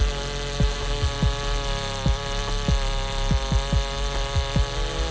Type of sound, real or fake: real